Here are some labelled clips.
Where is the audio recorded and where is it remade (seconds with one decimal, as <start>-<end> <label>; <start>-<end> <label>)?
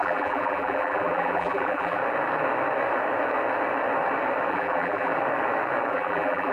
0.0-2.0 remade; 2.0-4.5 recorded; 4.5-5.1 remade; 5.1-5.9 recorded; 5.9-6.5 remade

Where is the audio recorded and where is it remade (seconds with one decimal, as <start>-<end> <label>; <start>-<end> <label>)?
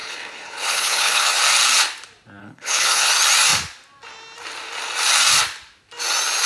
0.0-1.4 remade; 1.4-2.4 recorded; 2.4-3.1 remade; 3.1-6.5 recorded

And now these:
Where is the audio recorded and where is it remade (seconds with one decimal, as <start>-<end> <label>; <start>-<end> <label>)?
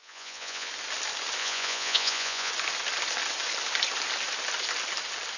0.0-0.7 remade; 0.7-1.4 recorded; 1.4-2.5 remade; 2.5-5.4 recorded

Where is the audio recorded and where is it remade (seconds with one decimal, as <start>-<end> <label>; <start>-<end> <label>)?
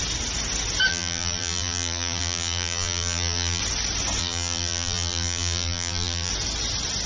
0.0-0.9 recorded; 0.9-3.6 remade; 3.6-4.2 recorded; 4.2-6.3 remade; 6.3-7.1 recorded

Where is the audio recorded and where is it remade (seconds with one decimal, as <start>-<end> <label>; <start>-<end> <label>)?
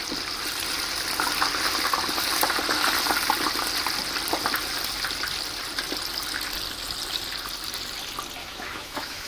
0.0-8.4 recorded; 8.4-9.3 remade